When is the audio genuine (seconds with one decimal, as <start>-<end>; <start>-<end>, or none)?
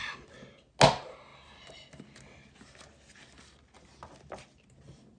0.0-5.2